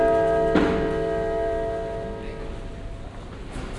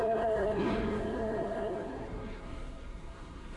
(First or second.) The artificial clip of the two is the second